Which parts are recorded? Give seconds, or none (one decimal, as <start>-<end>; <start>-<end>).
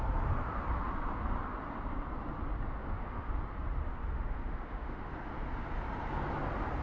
0.0-2.8; 3.3-3.8; 5.1-6.8